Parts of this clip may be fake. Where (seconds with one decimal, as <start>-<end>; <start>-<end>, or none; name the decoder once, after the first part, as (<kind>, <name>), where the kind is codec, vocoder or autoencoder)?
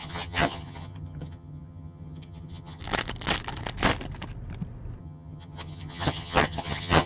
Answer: 0.0-2.8 (vocoder, HiFi-GAN); 5.0-7.1